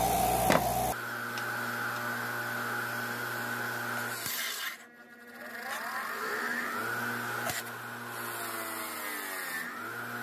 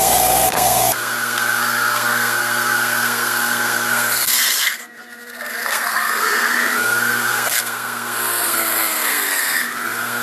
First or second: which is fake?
second